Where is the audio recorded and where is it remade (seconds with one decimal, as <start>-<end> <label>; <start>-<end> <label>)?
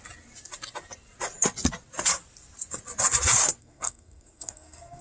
0.0-3.6 recorded; 3.6-5.0 remade